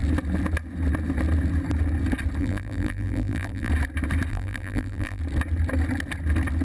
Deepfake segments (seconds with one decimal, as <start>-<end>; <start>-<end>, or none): 2.4-3.7; 4.3-5.2